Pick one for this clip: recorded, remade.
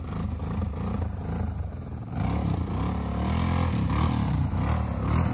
recorded